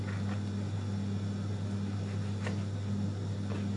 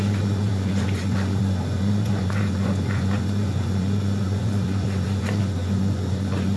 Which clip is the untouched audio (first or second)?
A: first